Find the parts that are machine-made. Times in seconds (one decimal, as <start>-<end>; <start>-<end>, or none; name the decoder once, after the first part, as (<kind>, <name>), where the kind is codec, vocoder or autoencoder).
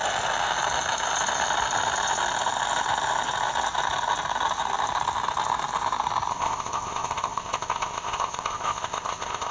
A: 6.3-9.5 (codec, ZipCodec)